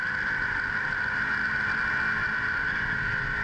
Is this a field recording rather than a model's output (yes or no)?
yes